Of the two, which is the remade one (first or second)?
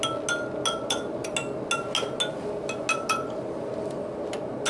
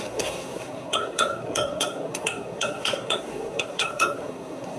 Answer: second